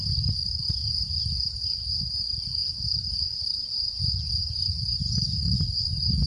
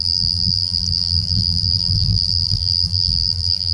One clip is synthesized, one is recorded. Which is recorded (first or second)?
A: first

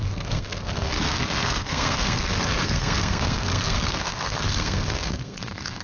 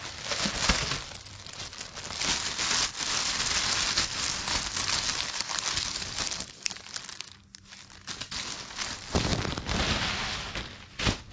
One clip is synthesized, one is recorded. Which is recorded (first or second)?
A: second